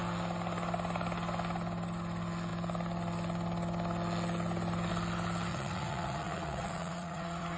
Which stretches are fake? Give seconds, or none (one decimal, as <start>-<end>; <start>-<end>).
5.5-7.6